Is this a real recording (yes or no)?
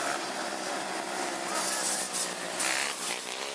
yes